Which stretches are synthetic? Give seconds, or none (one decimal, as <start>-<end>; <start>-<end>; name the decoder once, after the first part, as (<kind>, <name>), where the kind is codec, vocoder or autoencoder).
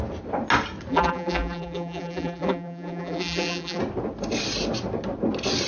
0.9-3.8 (vocoder, BigVGAN v2)